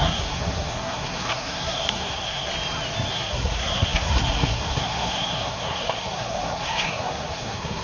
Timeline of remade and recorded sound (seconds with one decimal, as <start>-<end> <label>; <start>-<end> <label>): 0.0-2.5 remade; 2.5-3.1 recorded; 3.1-7.8 remade